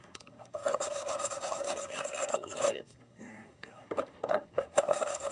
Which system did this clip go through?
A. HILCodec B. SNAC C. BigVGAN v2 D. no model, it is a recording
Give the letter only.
B